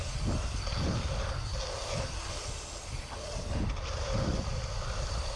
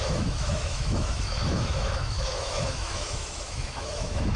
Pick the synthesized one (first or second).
second